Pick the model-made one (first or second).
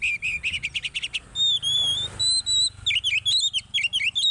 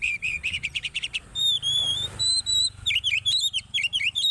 second